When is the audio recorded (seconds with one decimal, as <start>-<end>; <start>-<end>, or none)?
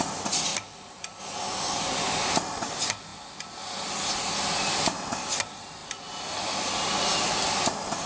0.0-8.1